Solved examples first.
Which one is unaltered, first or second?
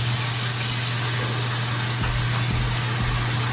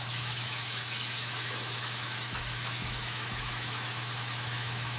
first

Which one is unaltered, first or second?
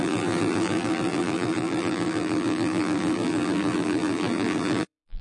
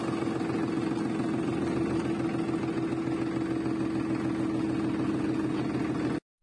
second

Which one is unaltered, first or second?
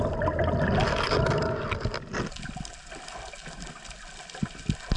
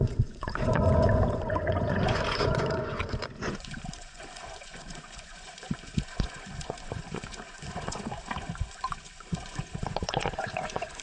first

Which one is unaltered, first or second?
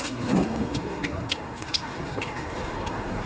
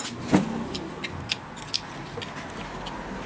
second